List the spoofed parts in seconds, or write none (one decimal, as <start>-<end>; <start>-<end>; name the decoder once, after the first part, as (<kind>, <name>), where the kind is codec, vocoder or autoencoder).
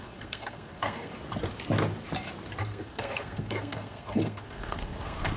0.0-1.1 (codec, SNAC); 2.6-5.4